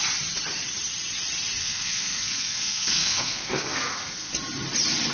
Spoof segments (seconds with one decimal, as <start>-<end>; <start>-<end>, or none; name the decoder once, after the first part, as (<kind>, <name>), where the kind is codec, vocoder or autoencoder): 1.6-4.3 (codec, SNAC)